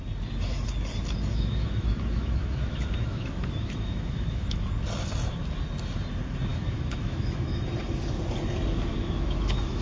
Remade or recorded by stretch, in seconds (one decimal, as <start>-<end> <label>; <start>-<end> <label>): 0.0-1.3 recorded; 1.3-4.7 remade; 4.7-6.5 recorded; 6.5-7.7 remade; 7.7-8.9 recorded; 8.9-9.8 remade